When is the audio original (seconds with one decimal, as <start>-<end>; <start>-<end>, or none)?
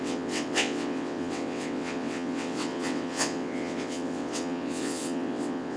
none